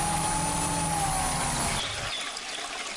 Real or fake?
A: real